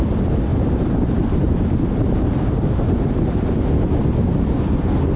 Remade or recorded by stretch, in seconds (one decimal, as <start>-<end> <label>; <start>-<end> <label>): 0.0-0.5 recorded; 0.5-3.4 remade; 3.4-5.2 recorded